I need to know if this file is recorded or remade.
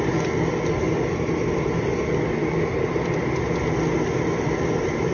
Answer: recorded